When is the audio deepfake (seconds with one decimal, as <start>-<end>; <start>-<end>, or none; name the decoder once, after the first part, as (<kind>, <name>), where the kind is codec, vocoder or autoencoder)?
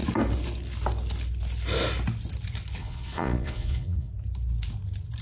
2.8-4.1 (vocoder, Vocos)